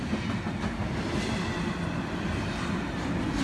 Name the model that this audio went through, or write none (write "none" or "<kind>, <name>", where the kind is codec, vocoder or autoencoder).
none